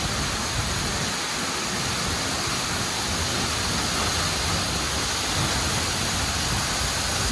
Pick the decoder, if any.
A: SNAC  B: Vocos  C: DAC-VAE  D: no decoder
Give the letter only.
D